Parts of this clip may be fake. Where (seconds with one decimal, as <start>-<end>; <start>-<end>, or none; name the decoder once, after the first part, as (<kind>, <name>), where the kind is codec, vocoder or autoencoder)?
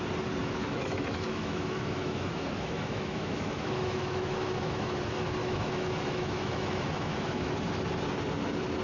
0.4-4.9 (autoencoder, DAC-VAE); 5.4-7.5